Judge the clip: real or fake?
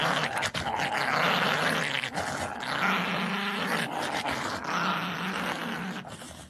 real